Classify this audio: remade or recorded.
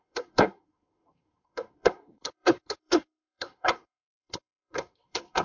remade